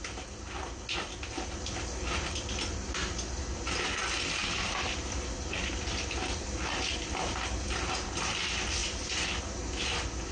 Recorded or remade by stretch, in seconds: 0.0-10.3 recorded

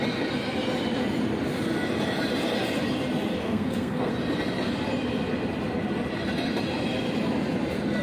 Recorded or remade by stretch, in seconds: 0.0-3.4 recorded; 3.4-4.1 remade; 4.1-8.0 recorded